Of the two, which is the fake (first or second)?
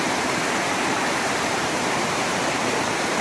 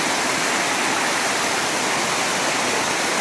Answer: first